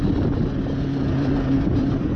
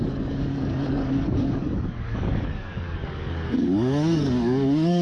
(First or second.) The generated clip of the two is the second